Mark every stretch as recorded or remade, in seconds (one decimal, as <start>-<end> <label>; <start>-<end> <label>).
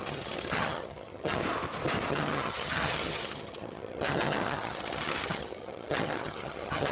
0.0-1.4 remade; 1.4-2.1 recorded; 2.1-6.9 remade